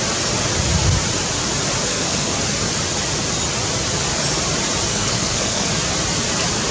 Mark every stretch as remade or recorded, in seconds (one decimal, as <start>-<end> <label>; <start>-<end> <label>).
0.0-1.9 recorded; 1.9-2.4 remade; 2.4-4.9 recorded; 4.9-5.7 remade; 5.7-6.7 recorded